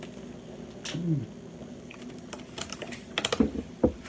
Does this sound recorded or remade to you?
recorded